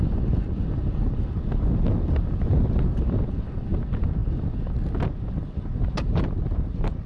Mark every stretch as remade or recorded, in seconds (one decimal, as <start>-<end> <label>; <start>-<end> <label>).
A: 0.0-7.1 recorded